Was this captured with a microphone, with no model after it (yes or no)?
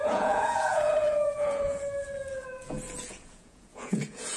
no